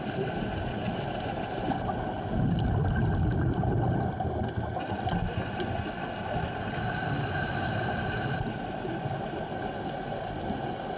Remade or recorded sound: recorded